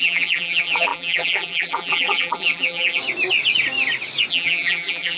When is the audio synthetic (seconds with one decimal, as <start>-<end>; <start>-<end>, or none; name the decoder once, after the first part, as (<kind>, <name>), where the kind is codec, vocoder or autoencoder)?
0.0-3.0 (vocoder, BigVGAN v2); 4.3-5.2